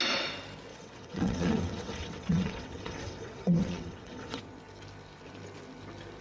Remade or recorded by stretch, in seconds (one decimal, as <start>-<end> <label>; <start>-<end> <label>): 0.0-0.7 recorded; 0.7-4.4 remade; 4.4-6.2 recorded